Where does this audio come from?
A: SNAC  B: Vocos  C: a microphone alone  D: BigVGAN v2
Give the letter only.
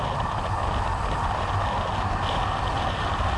C